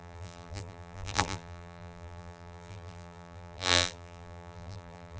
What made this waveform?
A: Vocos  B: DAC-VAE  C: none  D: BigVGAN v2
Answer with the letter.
D